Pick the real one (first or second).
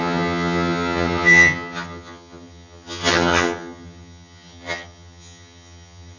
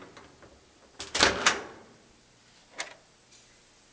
second